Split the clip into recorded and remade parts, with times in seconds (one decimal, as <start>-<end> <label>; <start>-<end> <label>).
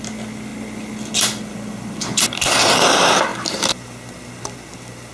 0.0-5.1 recorded